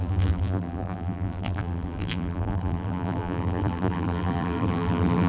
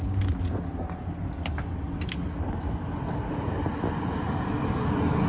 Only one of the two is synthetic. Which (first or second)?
first